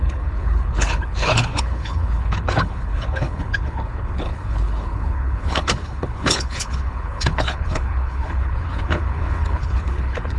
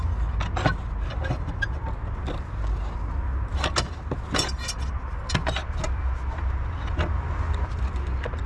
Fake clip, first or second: first